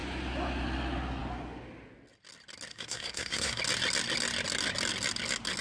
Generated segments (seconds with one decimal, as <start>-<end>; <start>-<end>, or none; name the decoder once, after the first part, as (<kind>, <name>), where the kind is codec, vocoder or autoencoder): 2.7-3.6 (codec, SNAC)